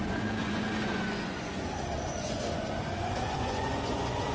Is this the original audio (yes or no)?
no